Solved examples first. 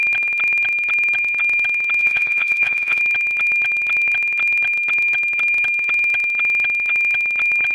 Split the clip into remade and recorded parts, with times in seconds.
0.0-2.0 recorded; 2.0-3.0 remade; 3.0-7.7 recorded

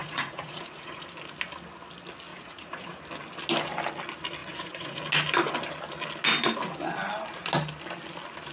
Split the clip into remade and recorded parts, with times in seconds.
0.0-1.0 remade; 1.0-2.3 recorded; 2.3-3.0 remade; 3.0-4.4 recorded; 4.4-5.0 remade; 5.0-8.5 recorded

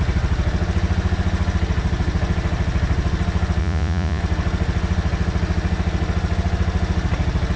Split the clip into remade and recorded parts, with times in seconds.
0.0-3.6 recorded; 3.6-4.2 remade; 4.2-7.6 recorded

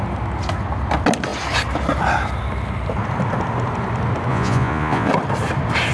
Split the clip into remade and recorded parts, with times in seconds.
0.0-4.3 recorded; 4.3-5.1 remade; 5.1-5.9 recorded

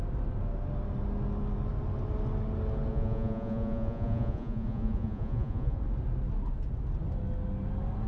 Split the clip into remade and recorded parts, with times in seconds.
0.0-2.9 recorded; 2.9-5.8 remade; 5.8-8.1 recorded